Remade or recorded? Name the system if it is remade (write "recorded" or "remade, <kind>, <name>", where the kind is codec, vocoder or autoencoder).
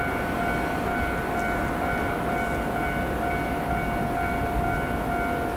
recorded